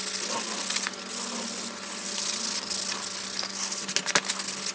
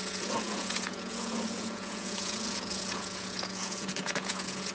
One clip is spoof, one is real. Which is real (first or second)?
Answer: first